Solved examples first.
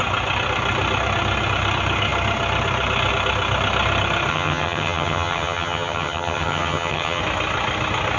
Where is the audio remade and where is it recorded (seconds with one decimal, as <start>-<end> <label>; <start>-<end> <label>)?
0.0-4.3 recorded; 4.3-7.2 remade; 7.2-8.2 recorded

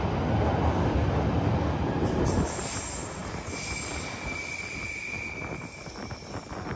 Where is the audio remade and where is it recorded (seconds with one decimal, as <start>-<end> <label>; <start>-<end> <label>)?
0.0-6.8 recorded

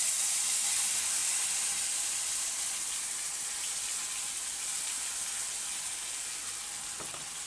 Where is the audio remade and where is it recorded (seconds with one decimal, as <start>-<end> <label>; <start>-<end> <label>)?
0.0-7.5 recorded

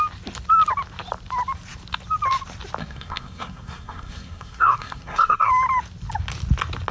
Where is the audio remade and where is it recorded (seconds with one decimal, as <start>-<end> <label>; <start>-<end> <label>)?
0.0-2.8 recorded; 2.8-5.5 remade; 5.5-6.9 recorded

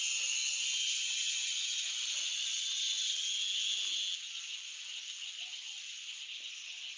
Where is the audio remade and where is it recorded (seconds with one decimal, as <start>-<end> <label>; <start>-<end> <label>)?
0.0-7.0 recorded